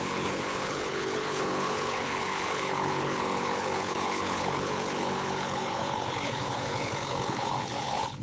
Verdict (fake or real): fake